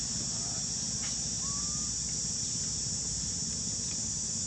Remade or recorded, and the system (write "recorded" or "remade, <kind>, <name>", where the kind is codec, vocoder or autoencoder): recorded